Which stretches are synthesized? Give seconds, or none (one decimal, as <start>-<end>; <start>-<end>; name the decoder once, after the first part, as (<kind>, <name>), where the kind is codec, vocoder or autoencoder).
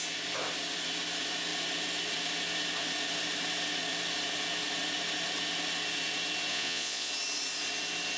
6.5-7.1 (vocoder, Vocos)